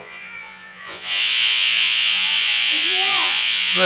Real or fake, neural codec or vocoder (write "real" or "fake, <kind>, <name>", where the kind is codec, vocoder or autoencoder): fake, vocoder, Vocos